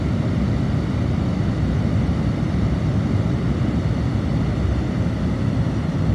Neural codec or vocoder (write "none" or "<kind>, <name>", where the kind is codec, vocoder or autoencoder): none